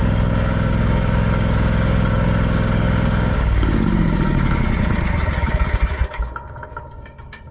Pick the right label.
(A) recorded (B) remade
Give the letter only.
B